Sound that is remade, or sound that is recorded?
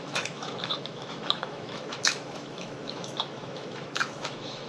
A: remade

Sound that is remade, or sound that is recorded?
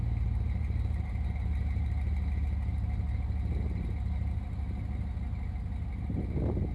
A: recorded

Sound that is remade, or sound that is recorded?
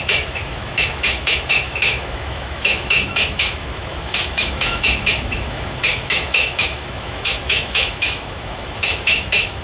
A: remade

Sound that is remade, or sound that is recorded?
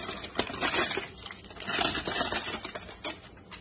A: recorded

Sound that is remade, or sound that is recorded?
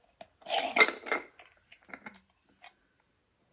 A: recorded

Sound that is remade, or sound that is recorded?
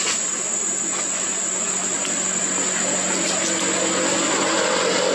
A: recorded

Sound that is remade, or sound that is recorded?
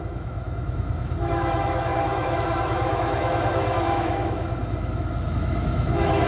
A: remade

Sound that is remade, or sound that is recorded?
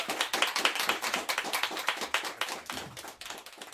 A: recorded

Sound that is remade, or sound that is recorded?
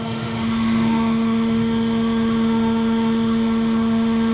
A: remade